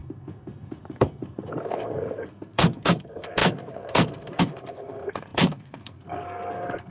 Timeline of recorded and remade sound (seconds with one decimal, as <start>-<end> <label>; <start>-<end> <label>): 0.0-6.9 remade